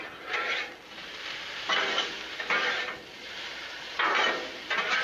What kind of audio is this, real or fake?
fake